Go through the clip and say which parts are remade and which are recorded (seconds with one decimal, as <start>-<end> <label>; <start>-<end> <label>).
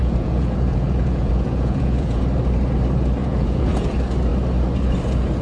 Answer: 0.0-2.2 remade; 2.2-3.2 recorded; 3.2-3.9 remade; 3.9-5.4 recorded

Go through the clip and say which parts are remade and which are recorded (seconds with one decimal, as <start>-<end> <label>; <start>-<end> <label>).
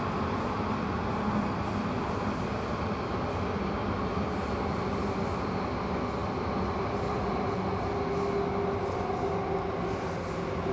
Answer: 0.0-10.7 recorded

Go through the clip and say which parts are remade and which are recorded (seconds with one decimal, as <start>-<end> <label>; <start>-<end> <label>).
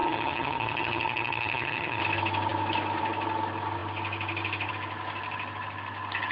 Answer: 0.0-2.0 remade; 2.0-6.3 recorded